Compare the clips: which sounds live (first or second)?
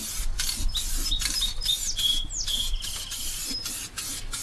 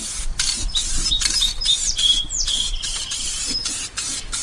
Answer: first